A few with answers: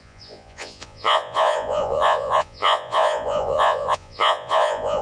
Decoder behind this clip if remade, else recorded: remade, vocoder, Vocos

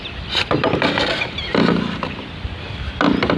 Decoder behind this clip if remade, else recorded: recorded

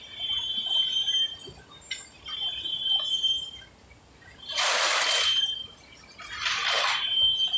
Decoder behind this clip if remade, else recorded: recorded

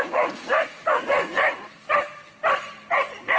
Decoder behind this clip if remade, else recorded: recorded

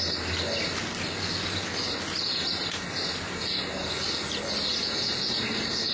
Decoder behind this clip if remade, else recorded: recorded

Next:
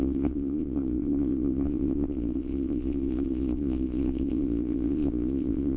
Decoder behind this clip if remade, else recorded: remade, vocoder, Vocos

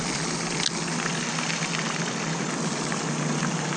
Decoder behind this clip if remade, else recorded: recorded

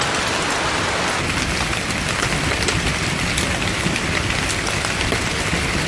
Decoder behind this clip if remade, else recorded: recorded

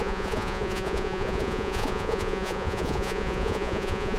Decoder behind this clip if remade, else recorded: remade, vocoder, Vocos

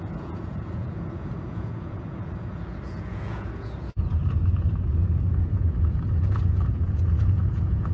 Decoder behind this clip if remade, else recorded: remade, vocoder, Vocos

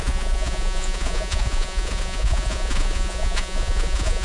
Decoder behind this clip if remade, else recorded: remade, vocoder, Vocos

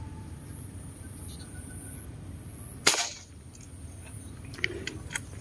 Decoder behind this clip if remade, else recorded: recorded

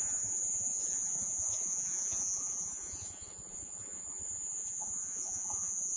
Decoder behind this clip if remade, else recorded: remade, vocoder, Vocos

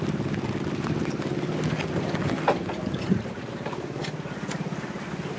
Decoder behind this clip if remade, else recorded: recorded